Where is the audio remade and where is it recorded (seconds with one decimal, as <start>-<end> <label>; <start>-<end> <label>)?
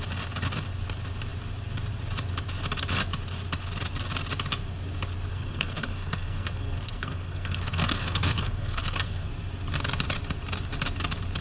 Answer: 0.0-5.3 recorded; 5.3-9.3 remade; 9.3-11.4 recorded